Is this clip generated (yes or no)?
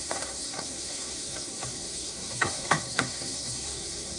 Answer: yes